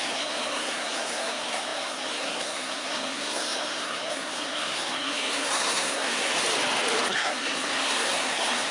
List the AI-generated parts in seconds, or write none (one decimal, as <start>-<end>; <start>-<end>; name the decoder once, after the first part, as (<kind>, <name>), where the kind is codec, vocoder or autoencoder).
0.0-6.3 (codec, SNAC); 7.1-8.7